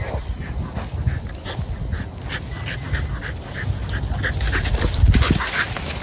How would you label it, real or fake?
real